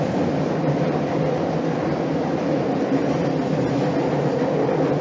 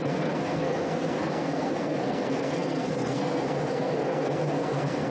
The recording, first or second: first